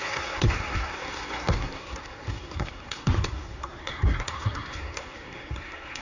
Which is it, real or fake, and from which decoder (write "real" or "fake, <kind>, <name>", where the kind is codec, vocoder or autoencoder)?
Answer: fake, codec, SNAC